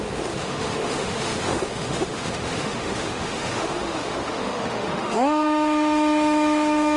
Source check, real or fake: fake